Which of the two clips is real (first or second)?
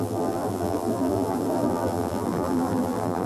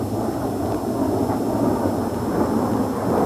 second